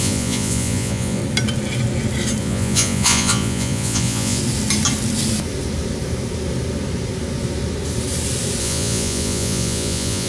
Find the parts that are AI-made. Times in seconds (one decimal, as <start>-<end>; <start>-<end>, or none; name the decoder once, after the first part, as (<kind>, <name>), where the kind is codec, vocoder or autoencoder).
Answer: 0.0-1.2 (vocoder, Vocos); 2.4-4.4; 8.6-10.3